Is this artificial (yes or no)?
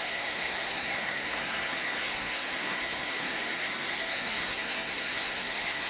yes